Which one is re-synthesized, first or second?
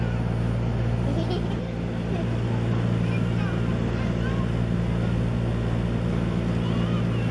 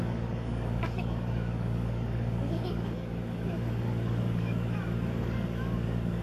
second